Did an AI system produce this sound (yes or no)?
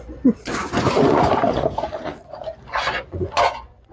yes